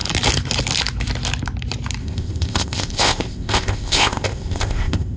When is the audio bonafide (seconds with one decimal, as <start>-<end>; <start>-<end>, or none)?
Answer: 0.0-2.0